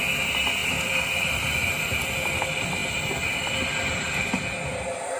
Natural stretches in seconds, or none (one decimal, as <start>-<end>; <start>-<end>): 0.0-5.2